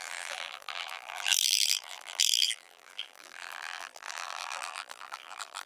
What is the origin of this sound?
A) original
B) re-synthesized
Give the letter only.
B